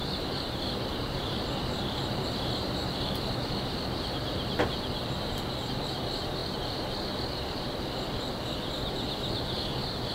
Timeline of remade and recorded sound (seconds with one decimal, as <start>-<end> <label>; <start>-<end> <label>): 0.0-4.6 remade; 4.6-10.1 recorded